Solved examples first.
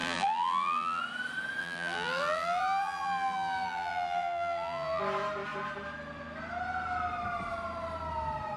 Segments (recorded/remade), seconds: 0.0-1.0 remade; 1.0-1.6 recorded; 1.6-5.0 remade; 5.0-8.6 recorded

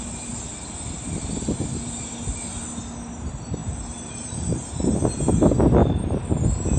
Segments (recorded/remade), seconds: 0.0-5.8 recorded; 5.8-6.8 remade